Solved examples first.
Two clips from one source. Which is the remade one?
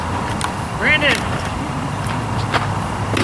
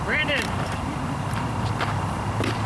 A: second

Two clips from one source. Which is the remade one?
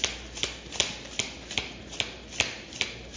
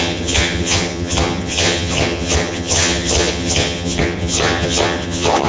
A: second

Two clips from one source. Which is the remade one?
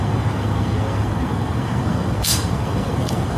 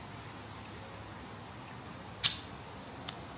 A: first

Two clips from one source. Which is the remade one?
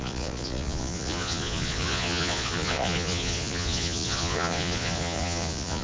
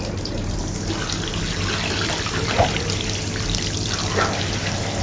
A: first